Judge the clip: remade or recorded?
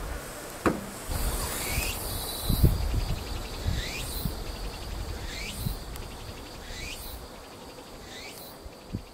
recorded